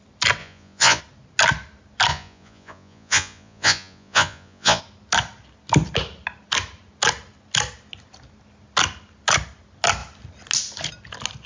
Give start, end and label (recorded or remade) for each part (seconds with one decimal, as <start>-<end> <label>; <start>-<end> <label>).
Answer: 0.0-0.4 recorded; 0.4-1.0 remade; 1.0-2.1 recorded; 2.1-4.8 remade; 4.8-11.5 recorded